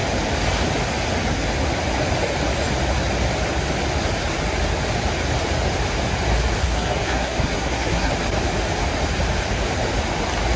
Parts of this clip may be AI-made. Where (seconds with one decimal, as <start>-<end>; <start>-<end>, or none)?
6.6-8.1